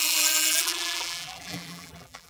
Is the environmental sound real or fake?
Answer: fake